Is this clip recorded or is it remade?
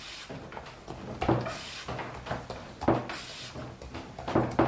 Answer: recorded